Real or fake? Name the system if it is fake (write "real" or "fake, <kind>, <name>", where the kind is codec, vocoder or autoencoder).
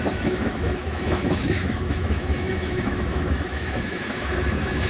fake, autoencoder, DAC-VAE